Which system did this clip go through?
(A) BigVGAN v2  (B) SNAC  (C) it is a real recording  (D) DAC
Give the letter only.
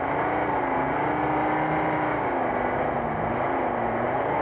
C